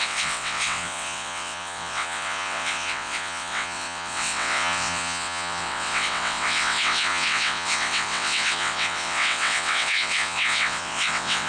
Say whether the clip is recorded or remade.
remade